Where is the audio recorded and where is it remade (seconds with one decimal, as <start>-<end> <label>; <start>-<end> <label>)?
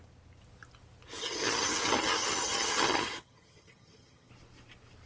0.0-1.2 recorded; 1.2-4.3 remade; 4.3-5.1 recorded